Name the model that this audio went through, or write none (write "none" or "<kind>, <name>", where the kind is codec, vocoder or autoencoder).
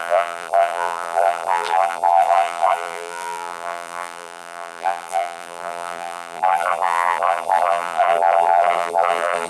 vocoder, BigVGAN v2